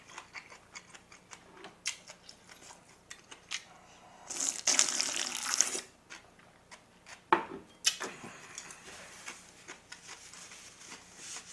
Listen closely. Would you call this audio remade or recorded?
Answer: recorded